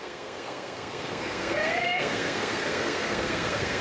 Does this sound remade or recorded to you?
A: remade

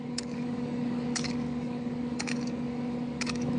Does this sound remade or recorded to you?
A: remade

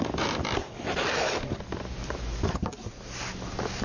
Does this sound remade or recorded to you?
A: recorded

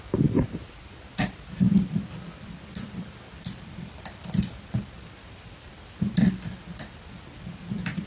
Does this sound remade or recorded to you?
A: remade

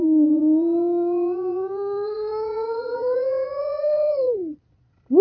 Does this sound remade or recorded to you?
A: remade